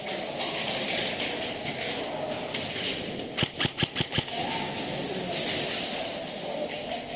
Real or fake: real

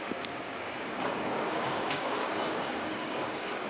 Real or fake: fake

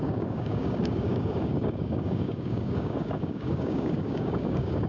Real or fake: fake